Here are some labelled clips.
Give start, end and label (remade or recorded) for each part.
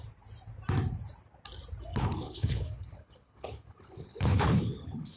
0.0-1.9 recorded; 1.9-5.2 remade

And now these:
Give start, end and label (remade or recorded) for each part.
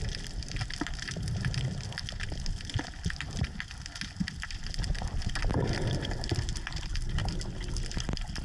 0.0-8.4 recorded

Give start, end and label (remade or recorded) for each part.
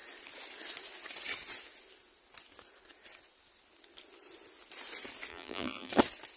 0.0-5.3 recorded; 5.3-5.9 remade; 5.9-6.4 recorded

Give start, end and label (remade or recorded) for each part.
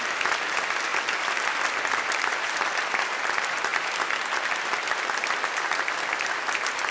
0.0-6.9 recorded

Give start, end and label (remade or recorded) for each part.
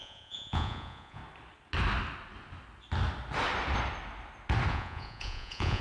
0.0-1.2 remade; 1.2-4.7 recorded; 4.7-5.8 remade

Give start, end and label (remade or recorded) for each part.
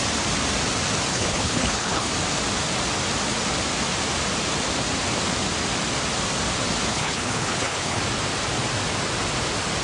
0.0-1.1 recorded; 1.1-2.1 remade; 2.1-6.9 recorded; 6.9-8.0 remade; 8.0-9.8 recorded